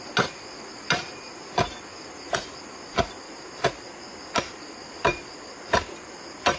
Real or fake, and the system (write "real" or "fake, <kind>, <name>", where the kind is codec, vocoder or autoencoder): real